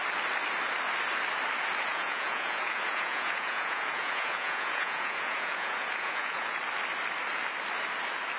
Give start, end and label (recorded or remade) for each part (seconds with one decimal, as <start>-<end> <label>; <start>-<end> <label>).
0.0-1.9 recorded; 1.9-6.6 remade; 6.6-8.4 recorded

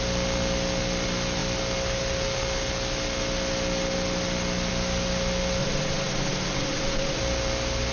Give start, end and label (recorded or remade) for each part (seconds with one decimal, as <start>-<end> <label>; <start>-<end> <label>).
0.0-5.6 recorded; 5.6-7.2 remade; 7.2-7.9 recorded

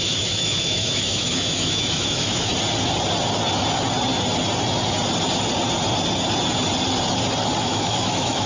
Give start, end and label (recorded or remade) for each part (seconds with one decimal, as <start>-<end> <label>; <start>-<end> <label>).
0.0-2.5 remade; 2.5-7.6 recorded; 7.6-8.5 remade

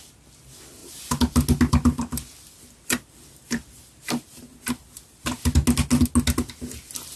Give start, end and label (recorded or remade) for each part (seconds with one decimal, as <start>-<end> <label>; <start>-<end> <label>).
0.0-7.2 recorded

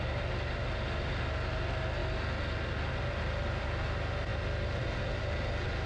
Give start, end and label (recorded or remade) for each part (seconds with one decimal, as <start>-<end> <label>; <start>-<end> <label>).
0.0-5.9 recorded